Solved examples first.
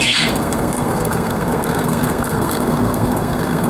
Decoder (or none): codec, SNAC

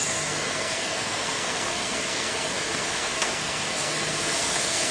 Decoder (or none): codec, SNAC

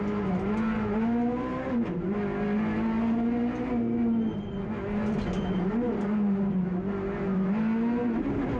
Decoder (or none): none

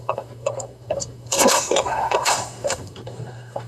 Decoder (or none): codec, SNAC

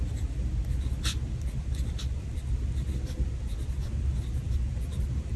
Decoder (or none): none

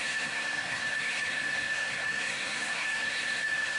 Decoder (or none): codec, SNAC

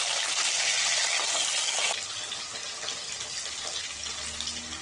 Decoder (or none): none